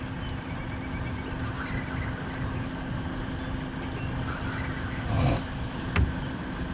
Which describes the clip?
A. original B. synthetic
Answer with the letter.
A